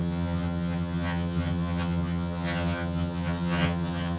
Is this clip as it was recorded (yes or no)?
no